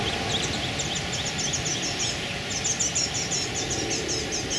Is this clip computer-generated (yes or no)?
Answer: no